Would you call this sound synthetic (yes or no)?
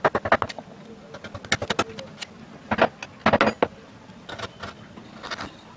no